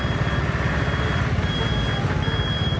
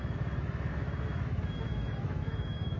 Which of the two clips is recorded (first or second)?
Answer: first